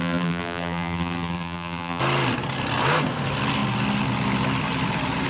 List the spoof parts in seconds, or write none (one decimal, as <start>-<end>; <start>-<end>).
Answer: 0.0-2.0